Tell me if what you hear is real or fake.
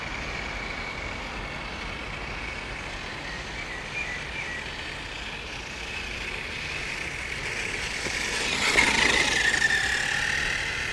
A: real